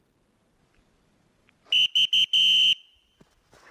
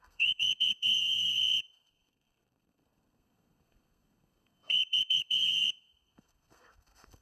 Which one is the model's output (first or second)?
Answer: second